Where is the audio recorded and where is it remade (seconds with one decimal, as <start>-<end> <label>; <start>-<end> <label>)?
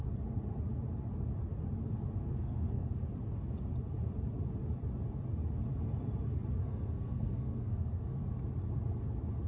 0.0-2.2 recorded; 2.2-2.9 remade; 2.9-6.6 recorded; 6.6-8.2 remade; 8.2-9.5 recorded